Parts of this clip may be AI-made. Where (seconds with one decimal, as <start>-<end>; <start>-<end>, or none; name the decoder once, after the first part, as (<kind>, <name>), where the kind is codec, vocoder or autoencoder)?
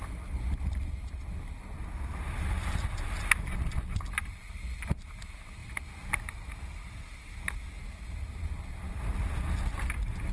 none